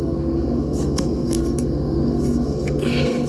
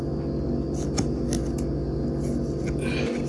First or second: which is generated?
first